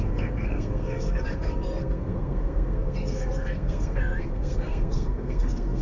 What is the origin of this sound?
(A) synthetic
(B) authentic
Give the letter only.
A